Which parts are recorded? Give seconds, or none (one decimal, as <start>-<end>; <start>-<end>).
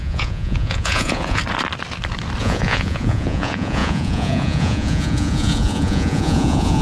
1.4-2.4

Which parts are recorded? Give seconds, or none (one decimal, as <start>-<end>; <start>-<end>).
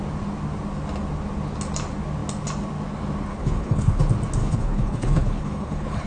0.0-3.3; 4.0-4.4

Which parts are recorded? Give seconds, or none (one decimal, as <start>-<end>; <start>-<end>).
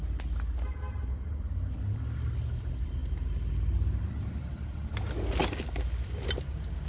0.0-6.9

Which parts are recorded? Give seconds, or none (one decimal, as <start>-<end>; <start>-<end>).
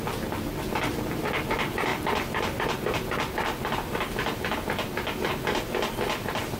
0.0-6.6